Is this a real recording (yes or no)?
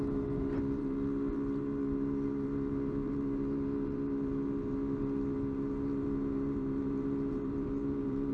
no